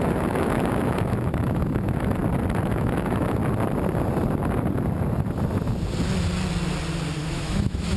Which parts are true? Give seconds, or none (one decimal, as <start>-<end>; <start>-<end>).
2.2-2.7; 3.4-7.2